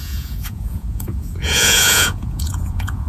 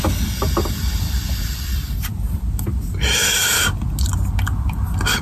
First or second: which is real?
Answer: second